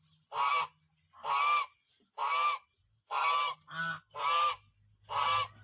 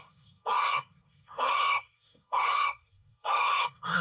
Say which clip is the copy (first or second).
second